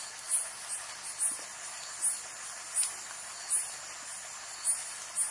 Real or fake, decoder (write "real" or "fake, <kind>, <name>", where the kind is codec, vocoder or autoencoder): real